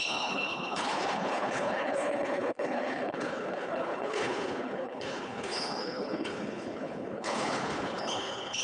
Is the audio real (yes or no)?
no